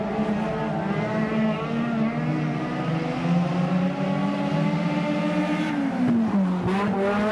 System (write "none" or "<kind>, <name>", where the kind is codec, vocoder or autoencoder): none